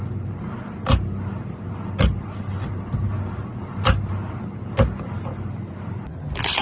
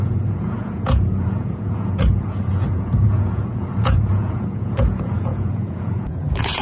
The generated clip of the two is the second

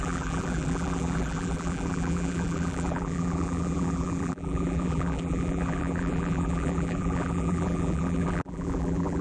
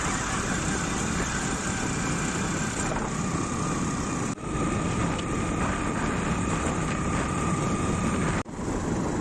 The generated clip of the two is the first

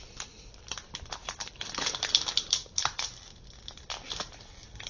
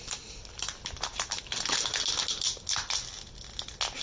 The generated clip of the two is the first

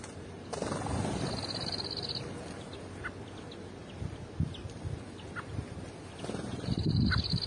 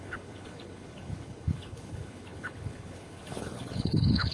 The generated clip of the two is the second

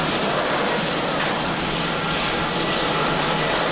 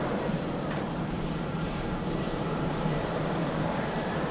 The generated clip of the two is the second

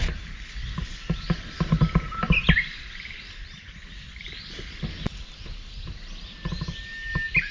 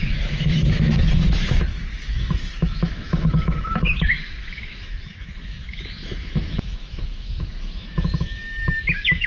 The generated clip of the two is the second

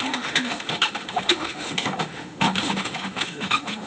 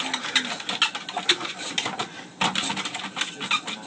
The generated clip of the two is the first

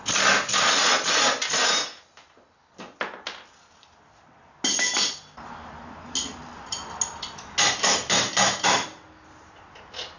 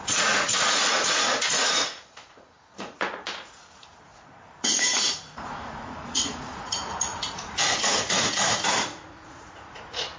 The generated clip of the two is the second